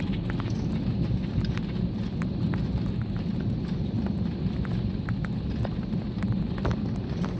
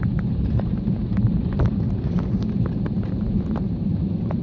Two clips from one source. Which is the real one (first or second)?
first